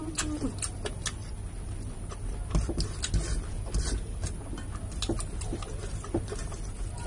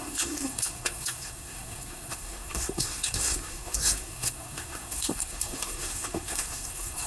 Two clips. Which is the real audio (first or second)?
first